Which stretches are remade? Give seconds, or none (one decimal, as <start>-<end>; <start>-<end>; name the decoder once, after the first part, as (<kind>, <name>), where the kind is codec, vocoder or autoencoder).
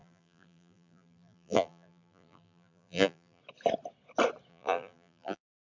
0.0-3.4 (vocoder, BigVGAN v2); 4.5-5.7